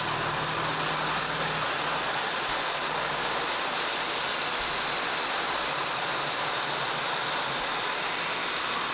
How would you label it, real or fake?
real